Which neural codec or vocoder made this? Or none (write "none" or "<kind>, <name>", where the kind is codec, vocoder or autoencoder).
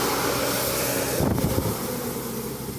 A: none